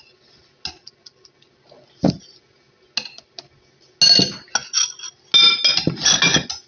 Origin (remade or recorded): recorded